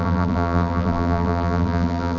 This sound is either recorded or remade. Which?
remade